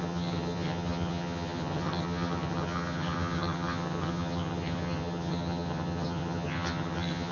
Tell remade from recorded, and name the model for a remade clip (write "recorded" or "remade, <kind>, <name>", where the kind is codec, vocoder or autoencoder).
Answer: remade, vocoder, HiFi-GAN